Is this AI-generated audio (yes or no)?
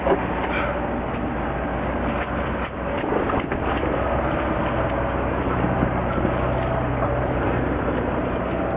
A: no